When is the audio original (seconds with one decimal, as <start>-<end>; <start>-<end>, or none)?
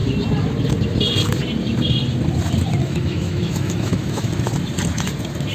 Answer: 0.0-2.8; 4.3-5.5